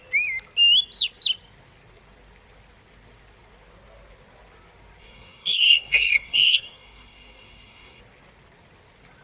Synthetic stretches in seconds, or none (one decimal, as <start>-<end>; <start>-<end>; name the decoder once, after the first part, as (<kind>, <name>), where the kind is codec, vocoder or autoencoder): 5.0-8.0 (codec, SNAC)